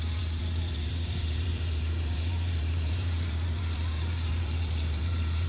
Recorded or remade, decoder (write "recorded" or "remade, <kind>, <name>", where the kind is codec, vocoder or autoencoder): remade, vocoder, BigVGAN v2